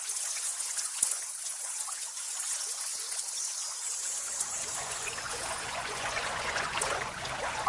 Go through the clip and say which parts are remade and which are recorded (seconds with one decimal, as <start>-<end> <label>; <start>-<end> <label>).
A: 0.0-7.7 remade